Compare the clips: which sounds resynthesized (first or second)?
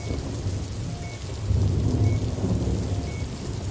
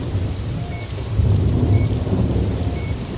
second